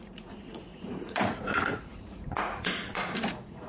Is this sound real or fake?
fake